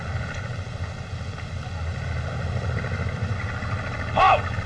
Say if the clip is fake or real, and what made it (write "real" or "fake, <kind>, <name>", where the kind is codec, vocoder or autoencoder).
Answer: real